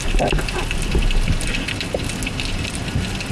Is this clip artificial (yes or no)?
no